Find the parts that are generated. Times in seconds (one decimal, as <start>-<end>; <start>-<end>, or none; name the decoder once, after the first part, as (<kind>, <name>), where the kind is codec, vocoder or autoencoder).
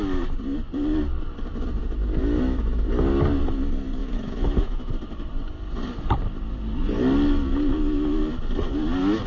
2.2-2.9 (autoencoder, DAC-VAE); 4.0-4.9